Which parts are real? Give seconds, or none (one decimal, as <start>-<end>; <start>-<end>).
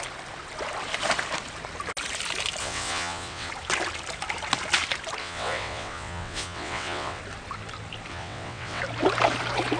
0.0-2.6; 3.5-5.2; 7.2-8.1; 8.8-9.8